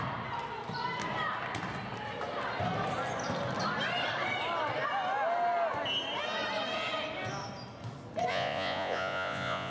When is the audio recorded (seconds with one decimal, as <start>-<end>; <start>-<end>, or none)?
0.0-8.3